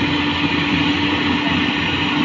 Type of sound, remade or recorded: recorded